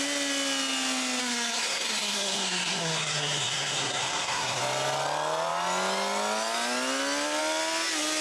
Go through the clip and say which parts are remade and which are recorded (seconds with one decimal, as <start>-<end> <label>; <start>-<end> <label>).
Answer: 0.0-1.2 recorded; 1.2-4.6 remade; 4.6-8.2 recorded